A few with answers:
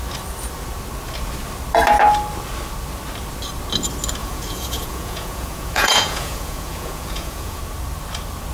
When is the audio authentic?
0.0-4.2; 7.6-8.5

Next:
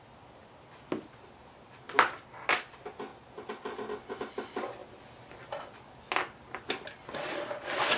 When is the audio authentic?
0.0-8.0

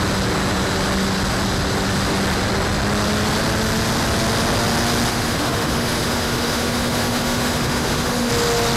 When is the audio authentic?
0.0-5.1; 8.3-8.8

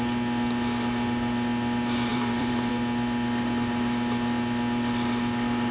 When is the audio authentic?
0.0-2.1; 2.7-5.7

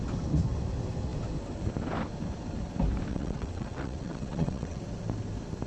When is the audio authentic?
0.0-3.1; 4.8-5.7

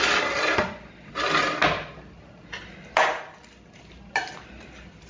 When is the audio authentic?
0.0-5.1

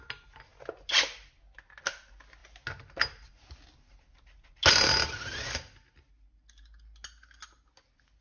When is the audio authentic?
0.0-8.2